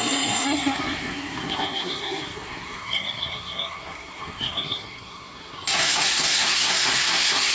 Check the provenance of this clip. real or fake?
fake